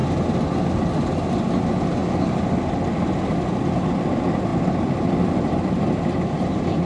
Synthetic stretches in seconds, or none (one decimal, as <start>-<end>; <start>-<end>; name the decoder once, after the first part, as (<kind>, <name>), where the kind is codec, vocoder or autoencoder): none